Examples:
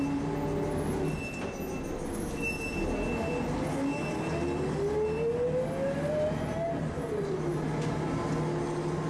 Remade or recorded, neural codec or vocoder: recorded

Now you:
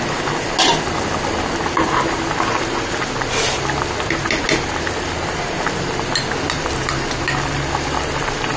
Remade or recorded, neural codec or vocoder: recorded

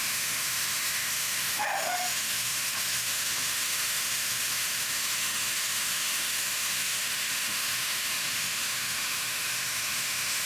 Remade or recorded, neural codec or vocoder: remade, autoencoder, DAC-VAE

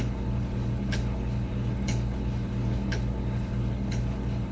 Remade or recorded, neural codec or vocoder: remade, codec, HILCodec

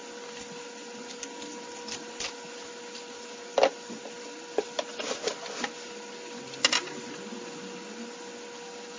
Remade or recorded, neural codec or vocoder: recorded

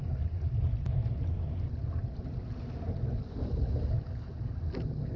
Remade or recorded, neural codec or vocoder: recorded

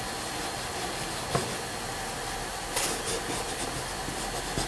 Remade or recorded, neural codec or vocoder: recorded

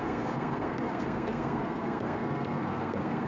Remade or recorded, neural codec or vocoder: remade, codec, SNAC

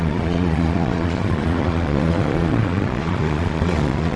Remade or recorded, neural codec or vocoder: remade, vocoder, Vocos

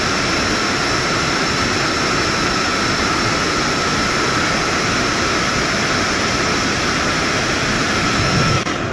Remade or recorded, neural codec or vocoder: remade, vocoder, BigVGAN v2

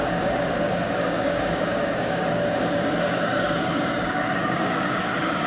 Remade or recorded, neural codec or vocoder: remade, codec, DAC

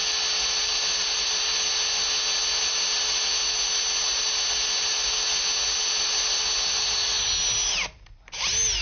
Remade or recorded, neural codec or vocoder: recorded